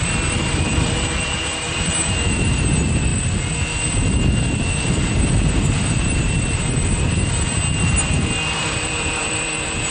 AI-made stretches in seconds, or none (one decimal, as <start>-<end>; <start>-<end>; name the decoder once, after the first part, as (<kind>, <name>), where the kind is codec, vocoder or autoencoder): 0.0-3.1 (vocoder, BigVGAN v2); 5.1-9.9